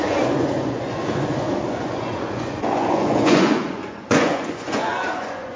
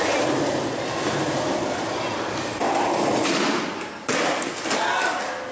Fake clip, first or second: first